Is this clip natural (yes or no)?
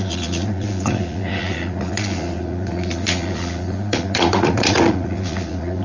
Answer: no